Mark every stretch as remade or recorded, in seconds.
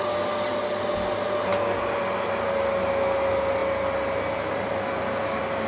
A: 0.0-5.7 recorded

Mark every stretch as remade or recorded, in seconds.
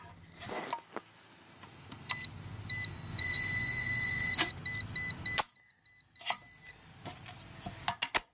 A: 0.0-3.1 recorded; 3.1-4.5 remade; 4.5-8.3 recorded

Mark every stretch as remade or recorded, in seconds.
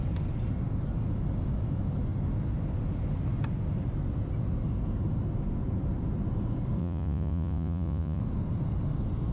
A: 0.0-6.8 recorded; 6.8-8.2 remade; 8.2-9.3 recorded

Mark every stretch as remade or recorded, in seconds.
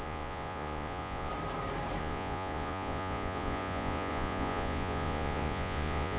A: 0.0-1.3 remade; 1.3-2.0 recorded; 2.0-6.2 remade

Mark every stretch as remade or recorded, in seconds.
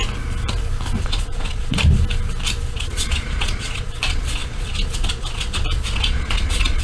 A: 0.0-1.0 recorded; 1.0-1.8 remade; 1.8-2.7 recorded; 2.7-6.8 remade